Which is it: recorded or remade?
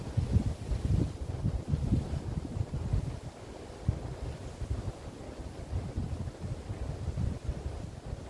recorded